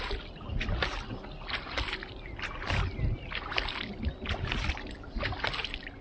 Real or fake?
real